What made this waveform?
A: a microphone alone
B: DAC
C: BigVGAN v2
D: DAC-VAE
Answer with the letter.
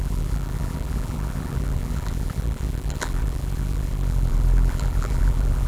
C